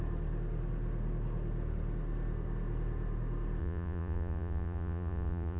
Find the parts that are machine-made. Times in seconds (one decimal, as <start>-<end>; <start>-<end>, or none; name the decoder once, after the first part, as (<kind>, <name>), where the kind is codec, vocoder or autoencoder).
3.6-5.6 (vocoder, Vocos)